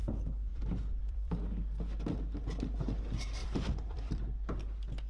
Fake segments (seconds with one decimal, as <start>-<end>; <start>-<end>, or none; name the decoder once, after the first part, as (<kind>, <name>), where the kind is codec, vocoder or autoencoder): 0.5-1.3 (vocoder, BigVGAN v2); 3.4-4.3